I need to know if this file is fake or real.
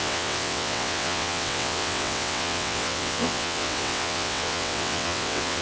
fake